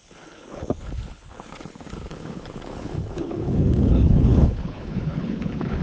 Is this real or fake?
fake